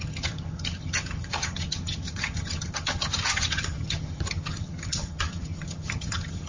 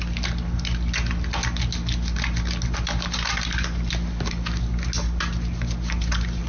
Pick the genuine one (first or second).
second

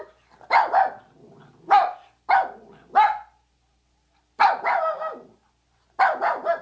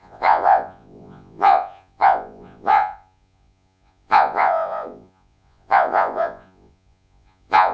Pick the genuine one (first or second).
first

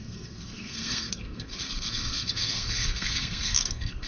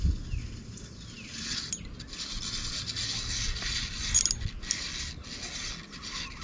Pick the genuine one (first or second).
second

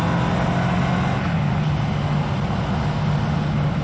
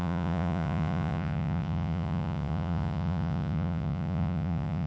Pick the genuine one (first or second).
first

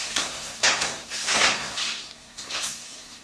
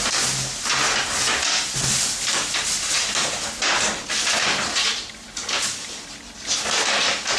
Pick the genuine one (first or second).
second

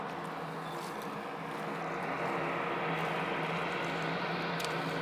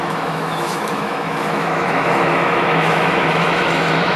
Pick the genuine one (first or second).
first